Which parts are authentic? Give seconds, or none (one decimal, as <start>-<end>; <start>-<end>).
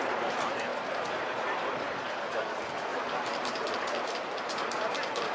0.7-1.8